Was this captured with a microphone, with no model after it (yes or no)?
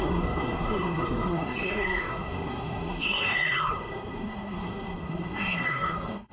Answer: no